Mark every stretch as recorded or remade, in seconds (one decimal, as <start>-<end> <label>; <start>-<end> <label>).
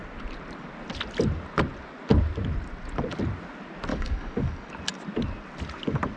0.0-3.9 recorded; 3.9-4.7 remade; 4.7-6.2 recorded